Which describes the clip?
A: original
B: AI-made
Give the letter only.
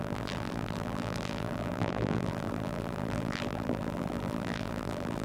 B